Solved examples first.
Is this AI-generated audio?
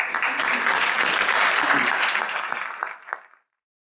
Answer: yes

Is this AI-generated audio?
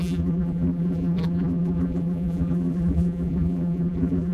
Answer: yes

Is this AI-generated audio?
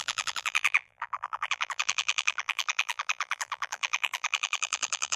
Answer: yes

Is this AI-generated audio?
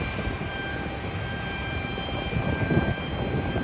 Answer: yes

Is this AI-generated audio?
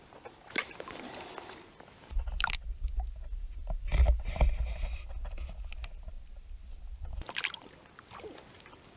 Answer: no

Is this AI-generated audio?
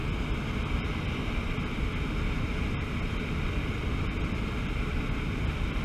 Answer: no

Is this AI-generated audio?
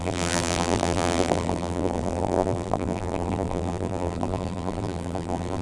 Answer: yes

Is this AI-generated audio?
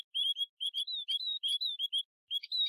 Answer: yes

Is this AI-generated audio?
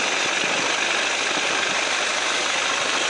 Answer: no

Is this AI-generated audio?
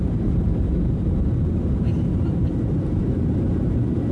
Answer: yes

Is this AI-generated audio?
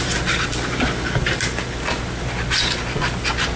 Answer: no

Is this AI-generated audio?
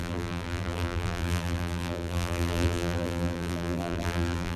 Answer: yes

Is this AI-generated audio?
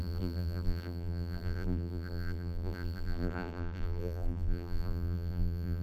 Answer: yes